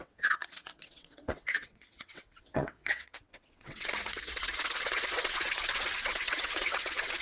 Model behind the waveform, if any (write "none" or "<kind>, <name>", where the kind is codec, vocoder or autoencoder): vocoder, WaveNeXt